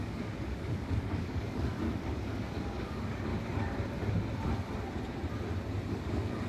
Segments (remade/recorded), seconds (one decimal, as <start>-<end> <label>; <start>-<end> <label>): 0.0-3.3 remade; 3.3-5.9 recorded; 5.9-6.5 remade